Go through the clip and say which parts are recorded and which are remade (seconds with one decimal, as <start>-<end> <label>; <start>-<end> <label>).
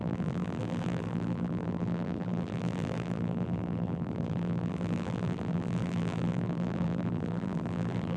0.0-8.2 remade